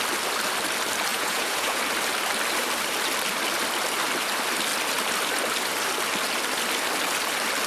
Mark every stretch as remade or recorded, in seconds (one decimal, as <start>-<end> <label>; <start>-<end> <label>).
0.0-1.1 recorded; 1.1-1.8 remade; 1.8-7.7 recorded